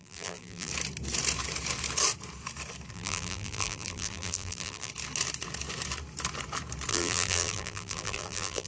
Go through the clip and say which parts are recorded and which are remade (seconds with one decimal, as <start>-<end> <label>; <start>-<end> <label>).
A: 0.0-0.7 remade; 0.7-2.9 recorded; 2.9-4.9 remade; 4.9-6.9 recorded; 6.9-8.7 remade

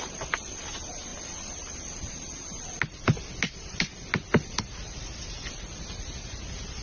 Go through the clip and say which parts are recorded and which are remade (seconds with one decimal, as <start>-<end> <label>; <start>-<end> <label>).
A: 0.0-6.8 recorded

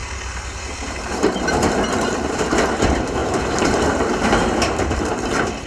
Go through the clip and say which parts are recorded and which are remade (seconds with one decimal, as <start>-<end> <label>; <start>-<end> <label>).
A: 0.0-2.6 remade; 2.6-3.2 recorded; 3.2-5.0 remade; 5.0-5.7 recorded

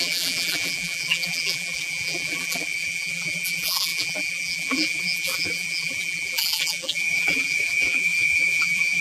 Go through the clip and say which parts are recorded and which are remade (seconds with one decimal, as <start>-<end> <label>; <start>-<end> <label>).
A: 0.0-9.0 remade

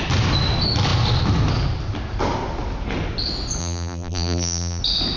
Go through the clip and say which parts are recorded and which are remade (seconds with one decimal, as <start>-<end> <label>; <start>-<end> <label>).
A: 0.0-3.6 recorded; 3.6-4.8 remade; 4.8-5.2 recorded